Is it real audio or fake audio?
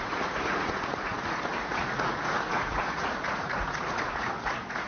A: fake